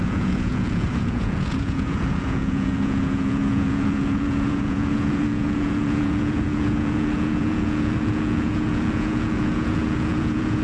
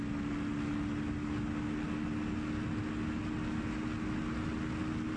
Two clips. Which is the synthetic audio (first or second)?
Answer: first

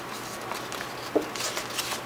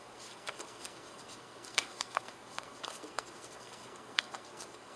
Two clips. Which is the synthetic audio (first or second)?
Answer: second